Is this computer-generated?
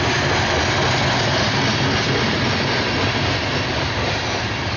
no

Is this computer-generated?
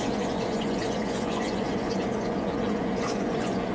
yes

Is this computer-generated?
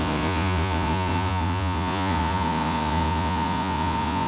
yes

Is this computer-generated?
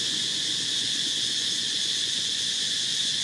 yes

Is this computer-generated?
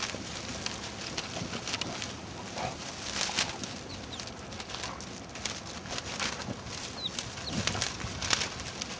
no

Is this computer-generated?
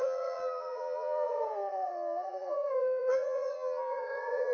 yes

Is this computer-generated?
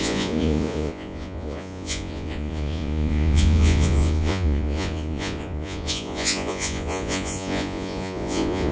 yes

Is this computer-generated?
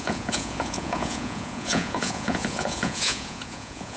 yes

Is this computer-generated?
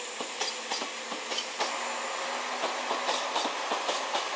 no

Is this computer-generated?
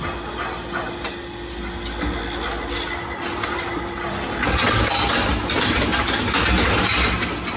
no